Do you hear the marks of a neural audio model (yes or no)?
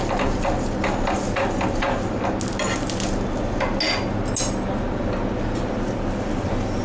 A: no